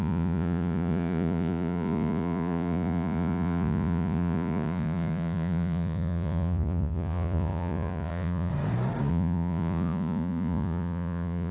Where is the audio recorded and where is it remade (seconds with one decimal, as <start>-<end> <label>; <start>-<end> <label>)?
0.0-8.5 remade; 8.5-9.1 recorded; 9.1-11.5 remade